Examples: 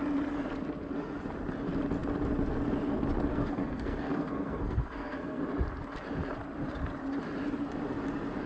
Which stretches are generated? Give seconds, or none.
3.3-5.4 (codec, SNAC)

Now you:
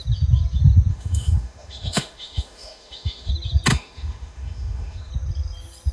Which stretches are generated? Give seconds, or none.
0.9-3.3 (autoencoder, DAC-VAE); 3.7-5.1

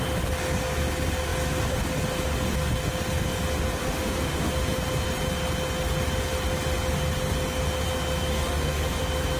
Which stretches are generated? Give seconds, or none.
3.8-4.5 (autoencoder, DAC-VAE); 8.3-9.0

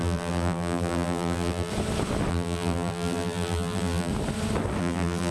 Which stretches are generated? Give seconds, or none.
0.0-1.7 (vocoder, BigVGAN v2); 2.3-4.1; 4.8-5.3

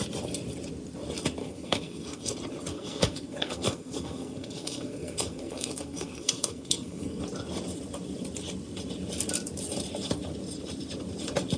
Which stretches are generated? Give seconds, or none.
1.4-2.3 (codec, SNAC); 2.7-7.2

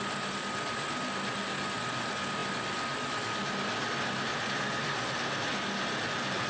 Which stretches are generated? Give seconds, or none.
none

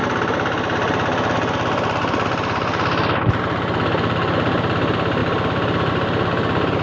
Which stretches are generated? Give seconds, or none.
none